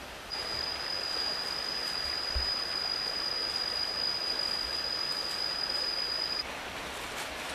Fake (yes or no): no